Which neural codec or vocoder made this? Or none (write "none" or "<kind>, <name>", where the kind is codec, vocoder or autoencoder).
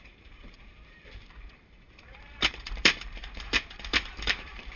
vocoder, BigVGAN v2